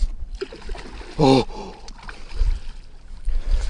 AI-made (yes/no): no